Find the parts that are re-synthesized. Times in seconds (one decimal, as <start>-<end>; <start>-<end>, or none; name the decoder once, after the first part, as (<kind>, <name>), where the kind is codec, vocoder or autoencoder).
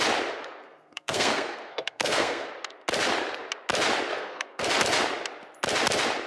0.6-2.5 (codec, SNAC); 4.1-4.6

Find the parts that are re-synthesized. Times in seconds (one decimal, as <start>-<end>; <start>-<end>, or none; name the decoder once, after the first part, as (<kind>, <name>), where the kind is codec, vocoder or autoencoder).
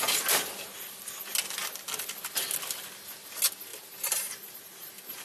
3.7-5.2 (vocoder, BigVGAN v2)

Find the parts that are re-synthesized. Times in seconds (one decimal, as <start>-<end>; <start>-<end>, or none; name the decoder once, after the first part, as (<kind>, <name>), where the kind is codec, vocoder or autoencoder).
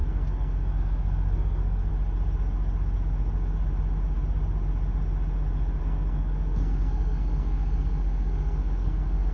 0.0-1.9 (codec, SNAC); 5.8-9.3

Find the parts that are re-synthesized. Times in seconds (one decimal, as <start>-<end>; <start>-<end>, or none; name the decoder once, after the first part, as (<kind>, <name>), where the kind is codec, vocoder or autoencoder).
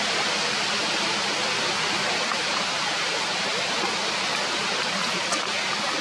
2.3-3.5 (vocoder, BigVGAN v2)